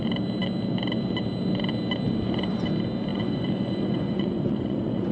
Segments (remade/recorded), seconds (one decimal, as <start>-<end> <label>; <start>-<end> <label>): 0.0-3.1 recorded; 3.1-5.1 remade